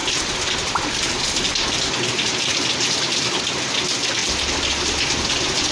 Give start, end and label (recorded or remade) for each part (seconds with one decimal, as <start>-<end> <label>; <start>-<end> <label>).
0.0-3.4 remade; 3.4-4.2 recorded; 4.2-5.7 remade